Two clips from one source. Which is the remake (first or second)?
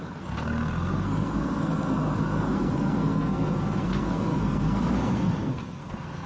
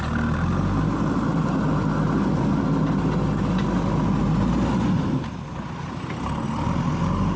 first